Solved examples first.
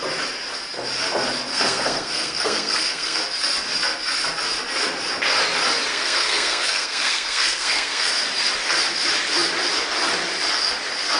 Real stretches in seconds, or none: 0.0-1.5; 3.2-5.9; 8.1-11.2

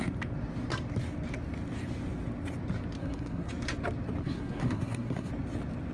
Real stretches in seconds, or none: 0.0-3.0; 3.5-4.2; 5.3-5.9

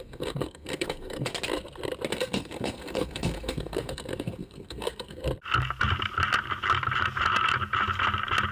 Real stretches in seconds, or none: 1.3-2.1; 5.2-8.5

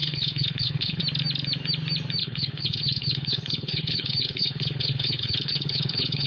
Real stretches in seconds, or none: 1.0-2.2

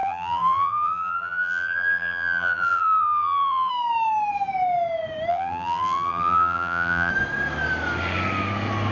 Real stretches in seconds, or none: 3.7-5.3; 7.1-8.9

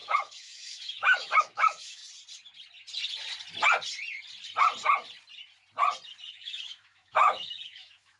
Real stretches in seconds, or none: 2.0-6.3

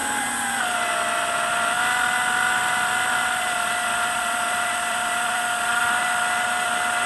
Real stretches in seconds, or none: 0.6-2.6; 5.4-7.1